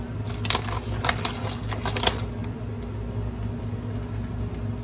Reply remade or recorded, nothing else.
recorded